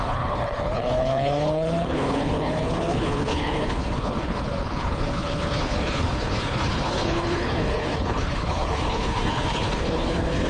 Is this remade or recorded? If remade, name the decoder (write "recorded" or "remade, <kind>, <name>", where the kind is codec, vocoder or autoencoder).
remade, codec, HILCodec